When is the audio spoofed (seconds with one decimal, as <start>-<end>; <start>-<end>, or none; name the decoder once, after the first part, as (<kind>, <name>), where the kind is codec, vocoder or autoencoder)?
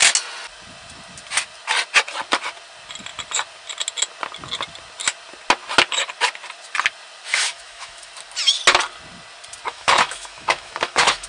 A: 7.3-8.1 (autoencoder, DAC-VAE); 9.7-11.3